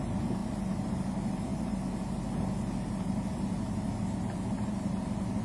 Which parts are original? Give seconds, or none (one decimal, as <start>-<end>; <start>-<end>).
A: 0.0-5.4